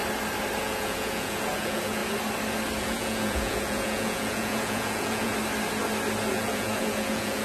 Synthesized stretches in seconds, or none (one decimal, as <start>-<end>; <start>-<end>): 0.6-2.0; 2.8-5.3; 6.3-7.4